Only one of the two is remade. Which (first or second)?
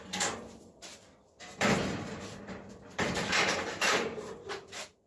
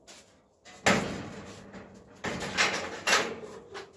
first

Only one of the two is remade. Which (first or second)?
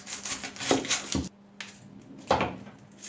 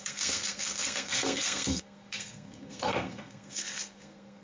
second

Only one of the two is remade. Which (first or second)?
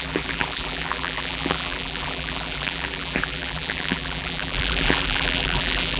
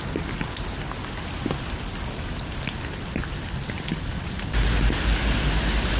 first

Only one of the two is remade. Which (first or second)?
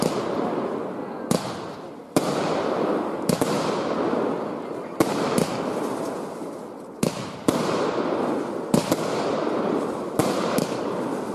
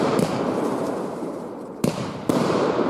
second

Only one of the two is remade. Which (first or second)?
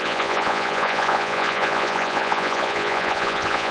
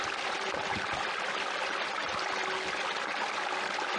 first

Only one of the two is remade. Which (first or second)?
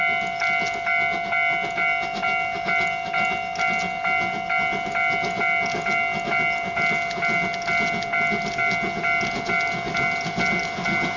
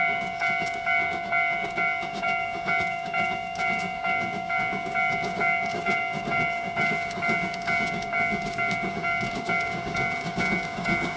second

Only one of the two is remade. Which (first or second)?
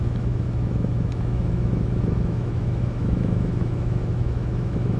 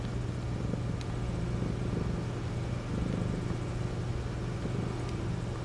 first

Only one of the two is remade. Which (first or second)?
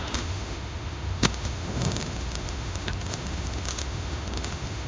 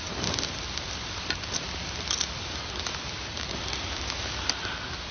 first